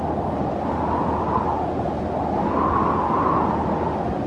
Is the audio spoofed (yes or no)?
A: no